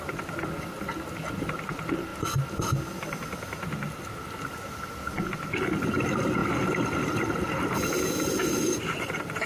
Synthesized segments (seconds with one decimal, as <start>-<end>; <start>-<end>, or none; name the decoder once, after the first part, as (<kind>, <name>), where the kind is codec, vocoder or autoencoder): none